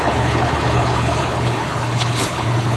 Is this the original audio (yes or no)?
no